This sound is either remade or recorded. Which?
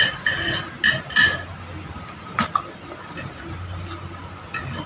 recorded